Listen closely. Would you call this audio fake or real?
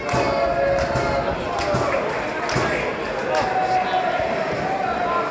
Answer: real